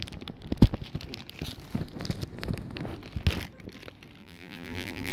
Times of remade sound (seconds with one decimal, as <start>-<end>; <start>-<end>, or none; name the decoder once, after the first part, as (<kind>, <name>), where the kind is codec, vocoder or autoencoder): 4.2-5.1 (vocoder, BigVGAN v2)